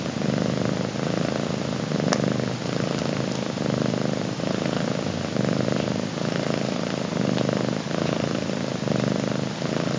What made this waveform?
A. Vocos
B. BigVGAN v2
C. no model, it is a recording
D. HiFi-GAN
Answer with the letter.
C